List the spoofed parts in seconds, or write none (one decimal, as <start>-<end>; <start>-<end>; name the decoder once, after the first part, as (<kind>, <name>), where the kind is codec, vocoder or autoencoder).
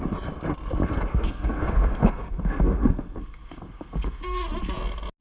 1.1-4.2 (codec, SNAC)